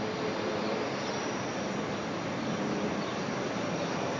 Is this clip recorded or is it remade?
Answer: recorded